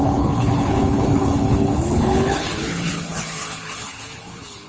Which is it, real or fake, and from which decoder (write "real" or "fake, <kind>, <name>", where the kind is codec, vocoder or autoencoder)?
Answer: fake, codec, HILCodec